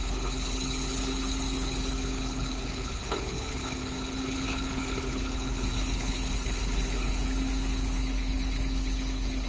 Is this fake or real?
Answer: fake